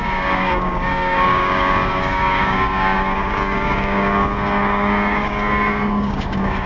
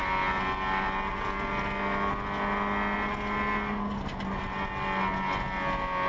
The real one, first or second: second